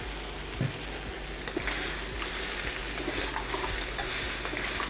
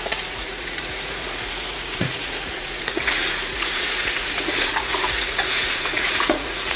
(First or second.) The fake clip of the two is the second